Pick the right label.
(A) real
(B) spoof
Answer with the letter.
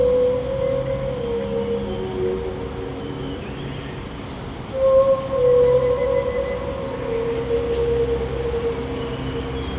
A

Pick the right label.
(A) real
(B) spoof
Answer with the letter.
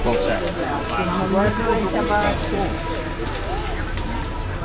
A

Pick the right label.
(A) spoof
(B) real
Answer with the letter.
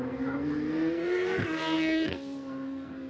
A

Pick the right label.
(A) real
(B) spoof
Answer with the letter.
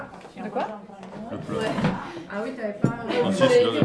A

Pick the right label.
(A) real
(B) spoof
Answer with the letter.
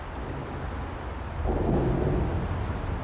A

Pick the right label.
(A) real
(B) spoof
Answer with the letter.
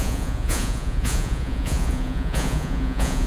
B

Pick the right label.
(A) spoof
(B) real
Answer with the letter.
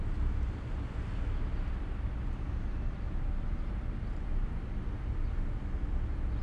A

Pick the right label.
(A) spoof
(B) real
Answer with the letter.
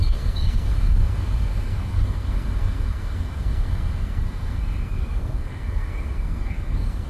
A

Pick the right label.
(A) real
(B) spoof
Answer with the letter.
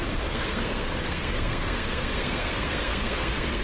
B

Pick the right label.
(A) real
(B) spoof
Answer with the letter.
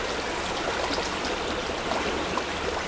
A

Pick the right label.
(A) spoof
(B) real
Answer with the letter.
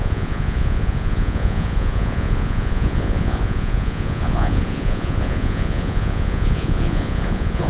A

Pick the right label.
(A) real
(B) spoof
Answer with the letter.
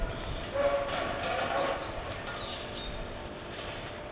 A